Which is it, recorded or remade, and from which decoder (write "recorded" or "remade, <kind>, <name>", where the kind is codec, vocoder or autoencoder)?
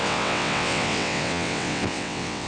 remade, vocoder, WaveNeXt